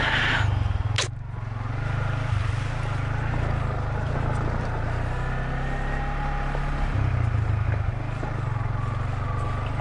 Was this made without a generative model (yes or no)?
yes